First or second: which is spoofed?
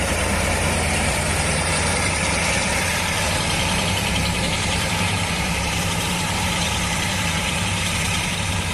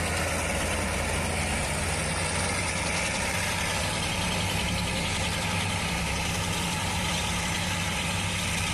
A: first